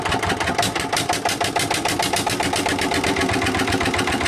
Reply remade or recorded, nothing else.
remade